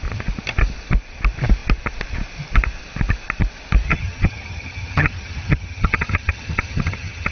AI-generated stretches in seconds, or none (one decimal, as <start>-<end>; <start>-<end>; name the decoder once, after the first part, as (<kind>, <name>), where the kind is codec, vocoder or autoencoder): 3.9-7.3 (vocoder, HiFi-GAN)